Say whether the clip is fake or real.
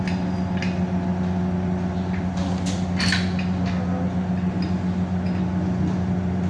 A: real